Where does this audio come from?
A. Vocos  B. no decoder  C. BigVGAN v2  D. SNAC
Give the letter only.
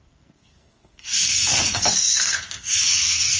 D